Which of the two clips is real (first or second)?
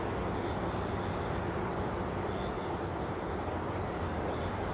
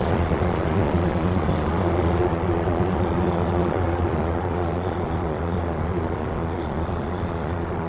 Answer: first